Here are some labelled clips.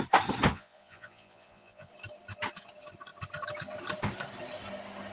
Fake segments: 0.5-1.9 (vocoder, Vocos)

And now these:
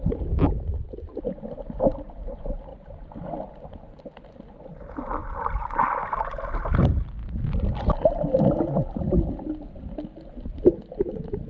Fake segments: none

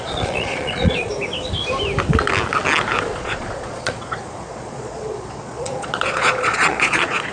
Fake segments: 0.0-1.1 (vocoder, Vocos); 3.0-7.3

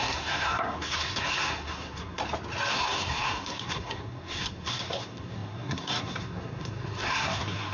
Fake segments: 0.0-2.2 (codec, SNAC); 2.7-7.7

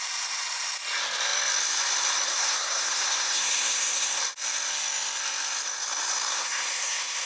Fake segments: 2.3-4.2 (codec, SNAC); 6.3-7.3

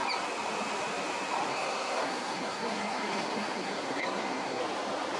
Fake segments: 1.5-4.6 (codec, SNAC)

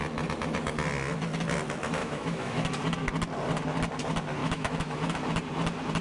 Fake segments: 2.0-2.7 (autoencoder, DAC-VAE); 4.4-5.2

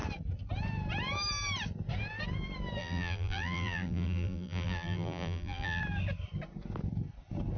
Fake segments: 2.8-5.8 (vocoder, BigVGAN v2)